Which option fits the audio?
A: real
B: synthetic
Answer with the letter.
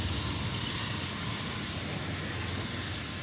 A